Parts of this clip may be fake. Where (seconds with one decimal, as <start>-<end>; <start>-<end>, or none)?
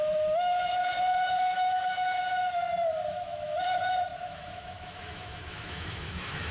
0.0-2.6; 3.1-6.5